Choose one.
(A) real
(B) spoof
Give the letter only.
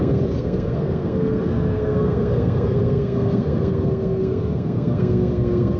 B